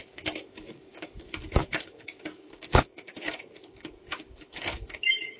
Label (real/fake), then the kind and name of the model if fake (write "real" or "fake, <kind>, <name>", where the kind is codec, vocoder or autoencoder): fake, codec, DAC